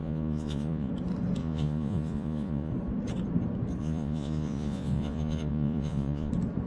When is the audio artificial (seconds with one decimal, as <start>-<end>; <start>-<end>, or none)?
0.0-0.9; 1.4-2.7; 3.8-6.3